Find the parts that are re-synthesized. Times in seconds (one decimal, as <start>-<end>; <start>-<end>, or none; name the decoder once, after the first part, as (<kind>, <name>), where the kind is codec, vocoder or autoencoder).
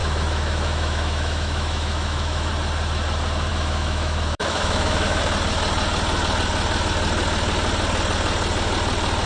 0.0-2.5 (autoencoder, DAC-VAE); 3.5-5.2